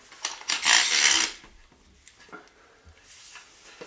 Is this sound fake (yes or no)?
no